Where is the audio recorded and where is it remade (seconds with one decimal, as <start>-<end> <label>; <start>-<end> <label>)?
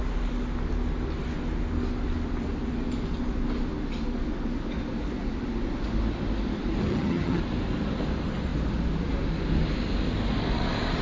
0.0-6.8 recorded; 6.8-7.4 remade; 7.4-11.0 recorded